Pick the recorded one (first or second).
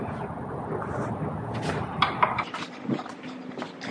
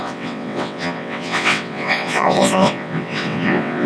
first